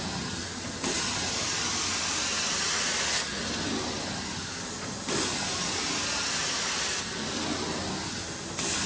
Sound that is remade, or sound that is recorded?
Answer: recorded